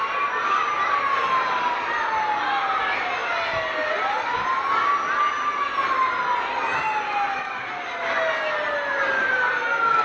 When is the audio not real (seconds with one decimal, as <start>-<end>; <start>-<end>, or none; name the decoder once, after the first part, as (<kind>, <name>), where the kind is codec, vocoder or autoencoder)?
none